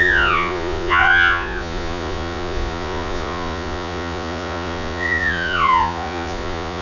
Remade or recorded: remade